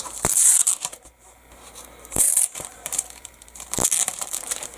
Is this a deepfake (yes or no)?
yes